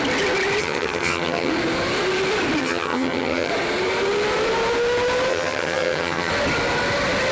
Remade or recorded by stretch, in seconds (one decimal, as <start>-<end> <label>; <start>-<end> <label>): 0.0-0.6 recorded; 0.6-1.5 remade; 1.5-2.6 recorded; 2.6-3.5 remade; 3.5-5.3 recorded; 5.3-6.3 remade; 6.3-7.3 recorded